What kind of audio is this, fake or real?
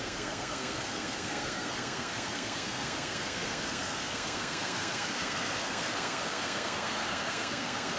fake